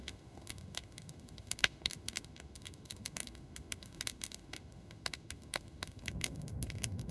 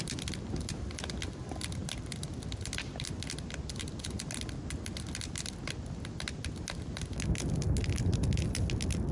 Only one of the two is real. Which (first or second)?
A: second